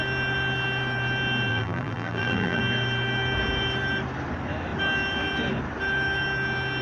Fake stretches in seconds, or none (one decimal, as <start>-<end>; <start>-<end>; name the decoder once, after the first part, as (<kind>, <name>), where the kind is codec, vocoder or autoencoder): 1.5-2.6 (vocoder, BigVGAN v2)